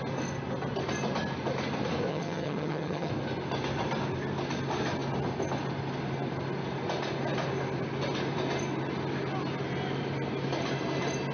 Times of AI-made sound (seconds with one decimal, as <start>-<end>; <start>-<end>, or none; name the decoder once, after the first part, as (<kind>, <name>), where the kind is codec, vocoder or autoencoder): 2.1-3.1 (vocoder, HiFi-GAN)